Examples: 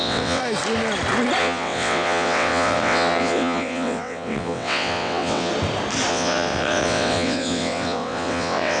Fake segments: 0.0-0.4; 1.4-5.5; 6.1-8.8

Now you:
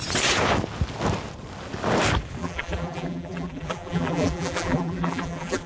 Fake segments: 2.4-5.7

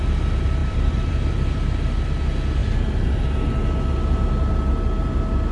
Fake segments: 0.6-1.1